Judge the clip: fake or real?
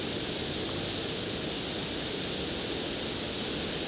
real